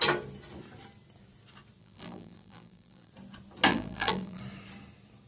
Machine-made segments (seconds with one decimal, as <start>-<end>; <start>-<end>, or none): 1.8-3.1; 3.7-4.4